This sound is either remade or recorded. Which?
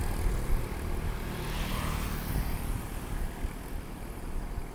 recorded